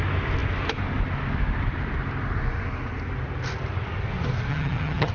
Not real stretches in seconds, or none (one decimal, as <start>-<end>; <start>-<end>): 4.5-5.1